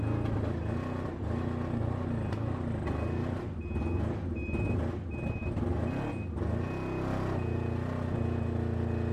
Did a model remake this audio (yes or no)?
no